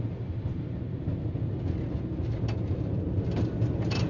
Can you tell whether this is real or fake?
real